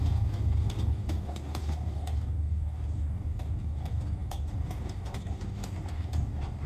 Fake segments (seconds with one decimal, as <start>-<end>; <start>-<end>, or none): 0.0-6.7